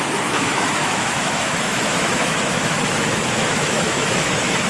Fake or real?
fake